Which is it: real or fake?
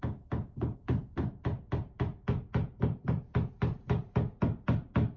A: real